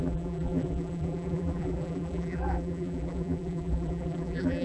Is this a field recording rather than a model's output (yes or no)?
no